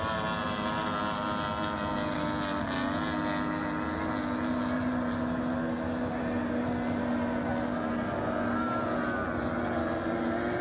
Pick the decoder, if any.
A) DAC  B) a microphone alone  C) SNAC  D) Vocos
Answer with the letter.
B